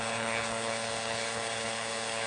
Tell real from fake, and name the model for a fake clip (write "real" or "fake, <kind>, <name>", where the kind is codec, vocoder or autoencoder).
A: fake, codec, HILCodec